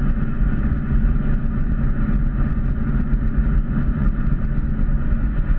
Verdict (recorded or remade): remade